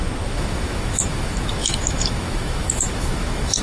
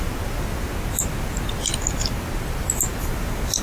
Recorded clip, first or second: second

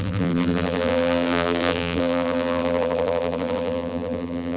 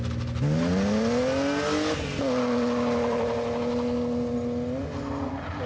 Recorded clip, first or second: second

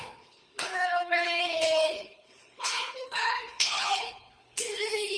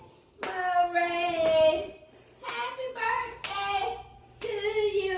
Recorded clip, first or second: second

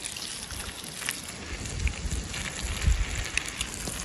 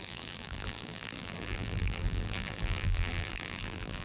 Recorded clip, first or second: first